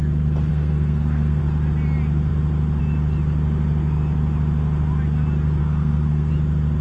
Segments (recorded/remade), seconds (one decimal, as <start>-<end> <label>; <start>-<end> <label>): 0.0-0.5 recorded; 0.5-1.4 remade; 1.4-5.6 recorded; 5.6-6.3 remade; 6.3-6.8 recorded